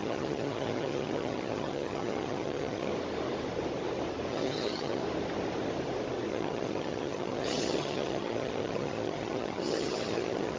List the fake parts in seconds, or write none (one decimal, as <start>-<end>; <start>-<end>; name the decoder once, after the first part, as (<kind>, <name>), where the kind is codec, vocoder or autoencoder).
0.0-2.9 (vocoder, HiFi-GAN); 4.3-5.0; 6.3-10.6